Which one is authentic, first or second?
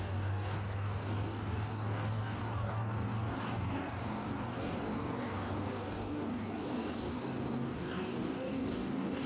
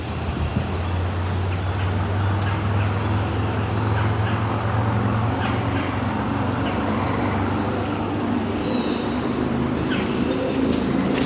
second